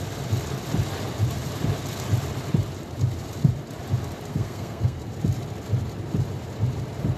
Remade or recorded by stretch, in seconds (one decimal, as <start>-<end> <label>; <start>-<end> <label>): 0.0-4.3 recorded; 4.3-5.0 remade; 5.0-7.2 recorded

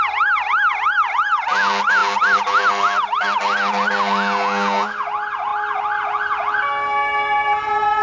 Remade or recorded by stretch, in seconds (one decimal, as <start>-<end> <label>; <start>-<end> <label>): 0.0-8.0 recorded

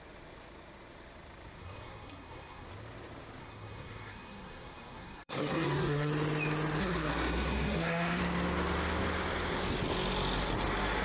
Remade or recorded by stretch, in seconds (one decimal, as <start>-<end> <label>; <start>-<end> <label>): 0.0-1.6 recorded; 1.6-2.7 remade; 2.7-3.4 recorded; 3.4-6.1 remade; 6.1-6.8 recorded; 6.8-8.2 remade; 8.2-11.0 recorded

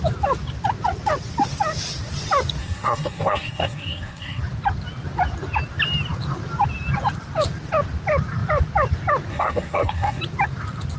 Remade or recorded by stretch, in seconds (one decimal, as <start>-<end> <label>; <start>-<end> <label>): 0.0-2.6 recorded; 2.6-4.4 remade; 4.4-9.3 recorded; 9.3-10.2 remade; 10.2-11.0 recorded

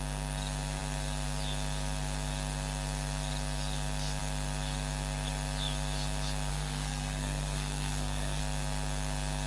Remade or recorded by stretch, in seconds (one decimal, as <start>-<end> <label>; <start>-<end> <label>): 0.0-6.5 recorded; 6.5-8.4 remade; 8.4-9.5 recorded